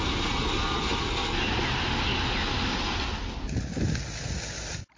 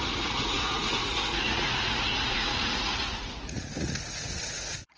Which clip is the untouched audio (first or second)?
first